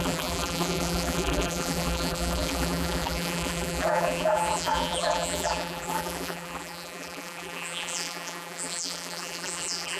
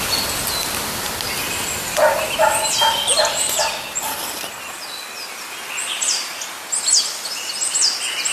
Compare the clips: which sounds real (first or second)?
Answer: second